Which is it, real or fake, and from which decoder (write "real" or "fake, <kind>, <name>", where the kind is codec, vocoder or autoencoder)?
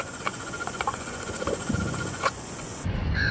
fake, vocoder, Vocos